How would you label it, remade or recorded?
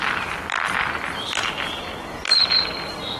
recorded